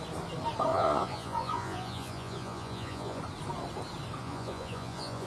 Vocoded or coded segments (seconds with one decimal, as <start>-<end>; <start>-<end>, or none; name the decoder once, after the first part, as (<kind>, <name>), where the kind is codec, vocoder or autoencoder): 0.7-3.2 (vocoder, Vocos); 4.2-5.3